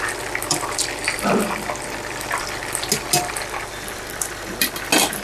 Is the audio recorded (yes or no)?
yes